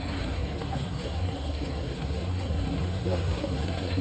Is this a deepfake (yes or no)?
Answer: yes